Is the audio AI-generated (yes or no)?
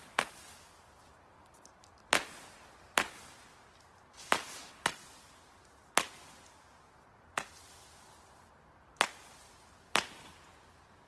no